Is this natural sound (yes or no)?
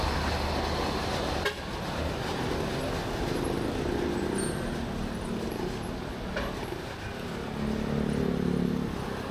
yes